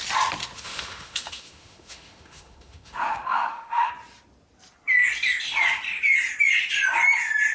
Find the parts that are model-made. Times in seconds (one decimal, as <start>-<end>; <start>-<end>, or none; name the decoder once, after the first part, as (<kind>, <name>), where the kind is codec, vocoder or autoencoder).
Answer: 0.4-3.9 (autoencoder, DAC-VAE)